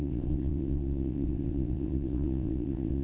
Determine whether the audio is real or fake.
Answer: fake